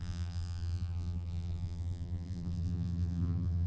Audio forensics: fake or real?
fake